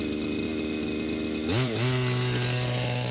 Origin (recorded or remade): recorded